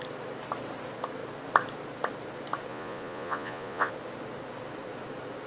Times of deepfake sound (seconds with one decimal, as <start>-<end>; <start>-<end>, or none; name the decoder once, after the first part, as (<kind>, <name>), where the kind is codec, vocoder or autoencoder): 2.7-3.9 (vocoder, Vocos)